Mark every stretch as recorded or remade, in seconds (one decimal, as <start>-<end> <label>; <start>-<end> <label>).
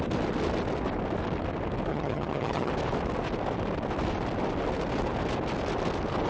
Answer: 0.0-1.9 recorded; 1.9-2.7 remade; 2.7-6.3 recorded